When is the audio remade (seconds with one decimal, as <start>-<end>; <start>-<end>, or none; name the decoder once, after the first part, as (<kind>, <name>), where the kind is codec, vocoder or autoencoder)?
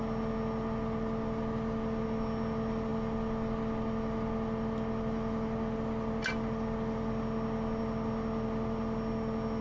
none